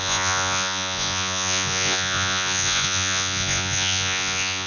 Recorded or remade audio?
remade